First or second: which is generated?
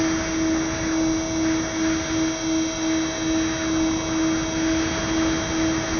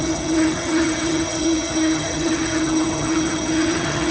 second